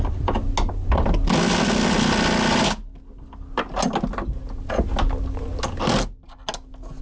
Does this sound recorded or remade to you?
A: recorded